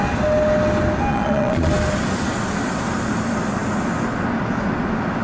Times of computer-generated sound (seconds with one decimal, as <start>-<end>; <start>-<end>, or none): 1.1-1.7